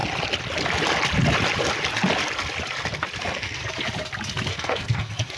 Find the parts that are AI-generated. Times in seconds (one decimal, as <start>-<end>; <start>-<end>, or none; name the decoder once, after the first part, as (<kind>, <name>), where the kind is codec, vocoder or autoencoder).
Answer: 3.2-3.6 (codec, SNAC); 4.5-5.4